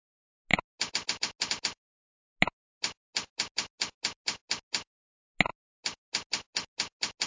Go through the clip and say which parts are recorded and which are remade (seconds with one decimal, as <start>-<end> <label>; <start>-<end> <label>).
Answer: 0.0-7.3 recorded